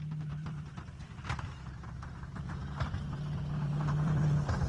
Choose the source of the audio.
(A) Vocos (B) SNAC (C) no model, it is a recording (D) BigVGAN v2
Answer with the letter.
D